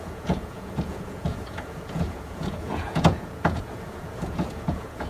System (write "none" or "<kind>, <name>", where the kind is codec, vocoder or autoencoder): vocoder, Vocos